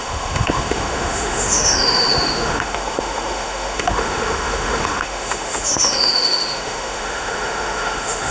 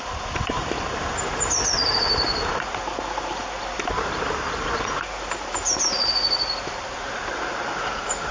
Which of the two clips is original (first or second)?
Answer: second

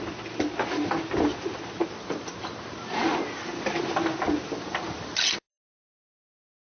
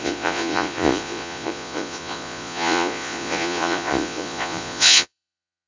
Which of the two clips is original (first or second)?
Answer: first